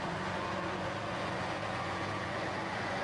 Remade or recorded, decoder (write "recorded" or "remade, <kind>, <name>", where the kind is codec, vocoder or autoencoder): remade, vocoder, Vocos